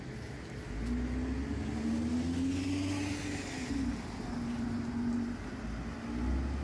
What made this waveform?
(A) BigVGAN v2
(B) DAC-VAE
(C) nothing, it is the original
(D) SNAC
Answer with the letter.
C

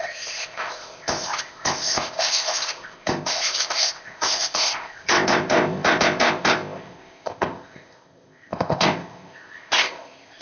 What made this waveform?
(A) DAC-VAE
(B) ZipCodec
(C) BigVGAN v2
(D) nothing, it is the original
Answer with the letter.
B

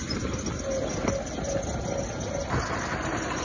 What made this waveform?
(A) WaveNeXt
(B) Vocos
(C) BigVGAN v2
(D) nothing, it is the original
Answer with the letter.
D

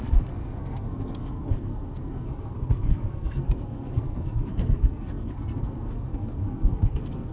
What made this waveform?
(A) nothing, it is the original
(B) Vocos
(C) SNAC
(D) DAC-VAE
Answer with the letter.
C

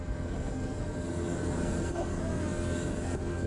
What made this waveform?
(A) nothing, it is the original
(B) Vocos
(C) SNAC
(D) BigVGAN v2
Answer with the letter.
C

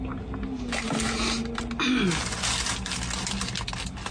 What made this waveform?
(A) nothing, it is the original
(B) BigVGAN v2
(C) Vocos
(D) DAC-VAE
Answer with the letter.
A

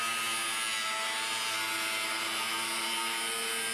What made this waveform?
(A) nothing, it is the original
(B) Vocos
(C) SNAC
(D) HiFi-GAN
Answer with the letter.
A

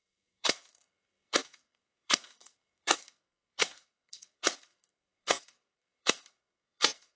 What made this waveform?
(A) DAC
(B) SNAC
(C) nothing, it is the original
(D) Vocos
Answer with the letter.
B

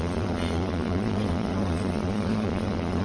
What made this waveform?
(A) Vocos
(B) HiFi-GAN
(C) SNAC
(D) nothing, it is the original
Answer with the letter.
A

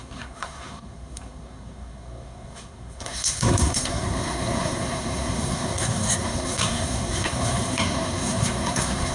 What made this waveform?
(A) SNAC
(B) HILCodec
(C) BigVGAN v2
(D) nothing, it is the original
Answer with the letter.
A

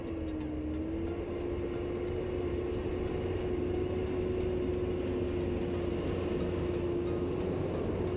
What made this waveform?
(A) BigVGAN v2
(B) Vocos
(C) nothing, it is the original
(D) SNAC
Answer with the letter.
C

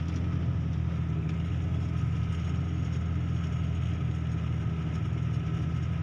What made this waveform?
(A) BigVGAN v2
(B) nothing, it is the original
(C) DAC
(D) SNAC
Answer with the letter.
B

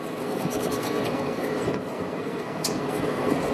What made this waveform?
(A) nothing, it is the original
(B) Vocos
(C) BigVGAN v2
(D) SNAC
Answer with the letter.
D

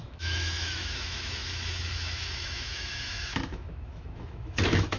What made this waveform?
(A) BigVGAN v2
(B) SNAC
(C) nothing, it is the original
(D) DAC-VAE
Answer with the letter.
D